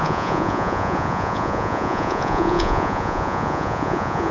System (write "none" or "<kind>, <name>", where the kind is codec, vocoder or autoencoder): vocoder, Vocos